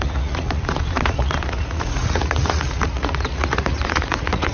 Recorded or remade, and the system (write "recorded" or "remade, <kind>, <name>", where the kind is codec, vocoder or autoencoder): remade, vocoder, Vocos